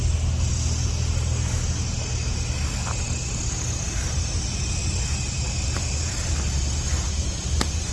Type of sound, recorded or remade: recorded